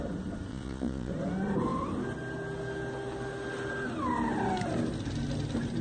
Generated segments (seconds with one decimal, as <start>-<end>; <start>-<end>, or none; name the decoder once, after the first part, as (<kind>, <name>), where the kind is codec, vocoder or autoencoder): 0.5-1.1 (vocoder, Vocos)

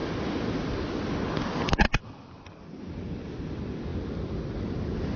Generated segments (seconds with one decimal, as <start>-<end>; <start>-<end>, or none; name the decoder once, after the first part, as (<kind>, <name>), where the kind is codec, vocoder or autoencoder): none